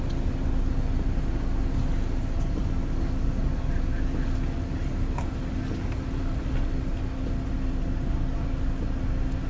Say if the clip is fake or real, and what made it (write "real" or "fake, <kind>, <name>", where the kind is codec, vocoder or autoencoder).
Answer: real